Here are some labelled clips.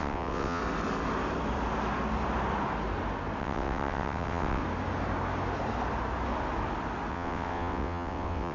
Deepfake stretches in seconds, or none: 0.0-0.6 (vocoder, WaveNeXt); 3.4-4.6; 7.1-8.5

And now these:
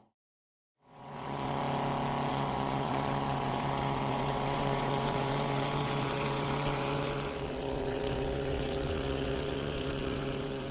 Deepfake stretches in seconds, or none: 0.0-1.6 (vocoder, WaveNeXt); 2.3-10.7

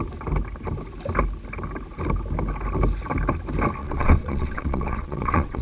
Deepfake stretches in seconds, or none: 3.8-5.6 (vocoder, WaveNeXt)

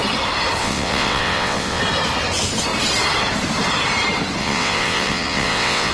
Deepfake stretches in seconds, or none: 0.6-1.8 (vocoder, WaveNeXt); 4.4-5.9